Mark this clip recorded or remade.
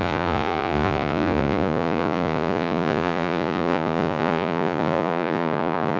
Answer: remade